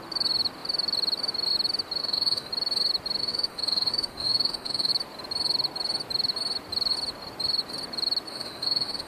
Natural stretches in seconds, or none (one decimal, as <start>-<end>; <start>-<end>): 0.0-2.0; 2.5-3.2; 4.9-8.3